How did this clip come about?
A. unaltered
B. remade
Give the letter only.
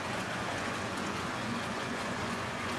B